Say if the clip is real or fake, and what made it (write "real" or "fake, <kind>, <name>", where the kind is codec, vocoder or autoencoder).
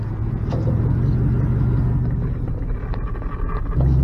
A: real